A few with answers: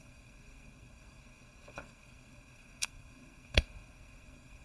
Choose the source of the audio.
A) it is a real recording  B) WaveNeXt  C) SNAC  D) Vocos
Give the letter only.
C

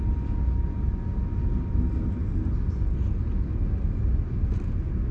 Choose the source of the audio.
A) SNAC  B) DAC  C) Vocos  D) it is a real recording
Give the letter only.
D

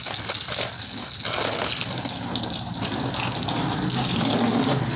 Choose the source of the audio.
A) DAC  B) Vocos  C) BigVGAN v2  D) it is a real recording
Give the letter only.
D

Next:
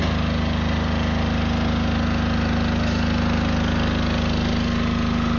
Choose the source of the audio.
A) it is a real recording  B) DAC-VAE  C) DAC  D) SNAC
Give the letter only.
A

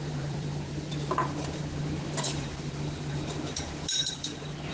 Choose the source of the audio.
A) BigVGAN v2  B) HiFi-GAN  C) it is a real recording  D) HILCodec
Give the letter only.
A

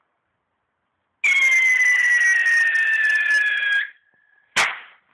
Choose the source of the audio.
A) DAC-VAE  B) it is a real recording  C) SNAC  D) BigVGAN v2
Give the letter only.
B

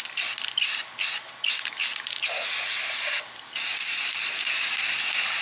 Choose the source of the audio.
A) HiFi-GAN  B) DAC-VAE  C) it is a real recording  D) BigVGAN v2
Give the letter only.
C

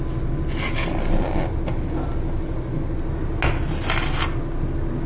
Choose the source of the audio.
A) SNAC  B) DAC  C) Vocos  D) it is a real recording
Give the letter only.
D